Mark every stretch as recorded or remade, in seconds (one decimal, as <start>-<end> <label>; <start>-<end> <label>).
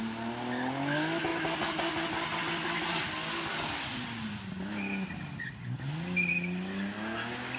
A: 0.0-7.6 recorded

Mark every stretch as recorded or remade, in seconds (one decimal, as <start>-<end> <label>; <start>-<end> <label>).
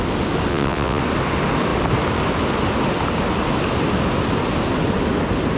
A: 0.0-0.5 recorded; 0.5-1.0 remade; 1.0-5.6 recorded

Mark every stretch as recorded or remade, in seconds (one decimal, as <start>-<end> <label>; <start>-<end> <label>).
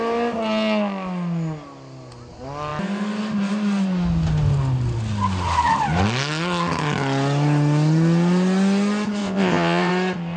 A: 0.0-9.2 recorded; 9.2-9.9 remade; 9.9-10.4 recorded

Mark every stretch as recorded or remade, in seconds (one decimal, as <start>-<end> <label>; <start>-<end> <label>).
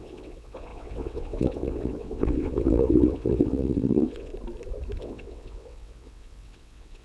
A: 0.0-4.3 remade; 4.3-5.0 recorded; 5.0-7.0 remade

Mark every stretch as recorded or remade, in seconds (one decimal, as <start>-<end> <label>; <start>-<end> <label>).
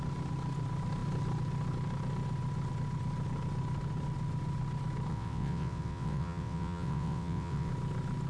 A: 0.0-5.1 recorded; 5.1-7.7 remade; 7.7-8.3 recorded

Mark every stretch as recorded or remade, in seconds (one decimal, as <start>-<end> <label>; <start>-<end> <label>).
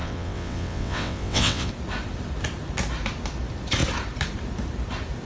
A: 0.0-1.7 remade; 1.7-5.2 recorded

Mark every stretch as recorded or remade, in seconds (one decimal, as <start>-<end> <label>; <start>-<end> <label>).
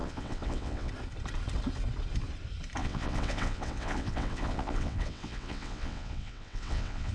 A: 0.0-0.9 remade; 0.9-2.8 recorded; 2.8-7.1 remade